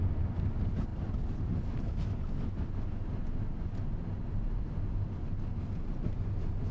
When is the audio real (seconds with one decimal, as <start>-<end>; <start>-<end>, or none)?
0.0-6.7